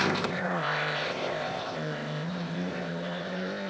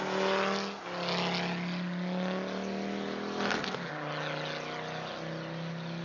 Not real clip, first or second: first